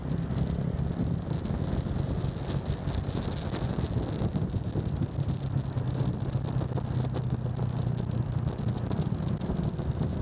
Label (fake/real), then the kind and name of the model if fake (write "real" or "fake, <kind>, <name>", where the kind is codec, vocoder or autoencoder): real